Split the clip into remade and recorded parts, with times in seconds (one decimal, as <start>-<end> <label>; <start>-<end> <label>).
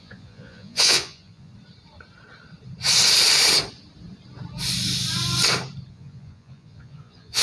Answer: 0.0-1.5 remade; 1.5-5.9 recorded; 5.9-7.4 remade